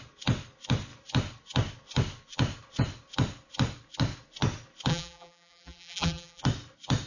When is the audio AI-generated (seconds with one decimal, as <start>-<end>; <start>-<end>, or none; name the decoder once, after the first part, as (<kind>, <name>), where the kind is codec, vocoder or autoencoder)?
4.9-6.4 (vocoder, BigVGAN v2)